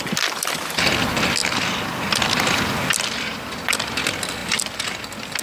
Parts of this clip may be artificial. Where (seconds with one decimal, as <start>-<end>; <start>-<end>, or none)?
none